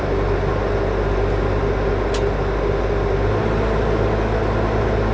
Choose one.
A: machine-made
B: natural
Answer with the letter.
B